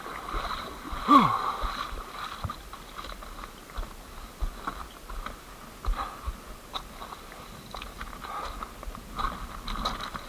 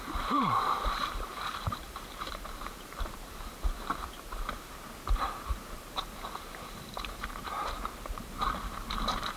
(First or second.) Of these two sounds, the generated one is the second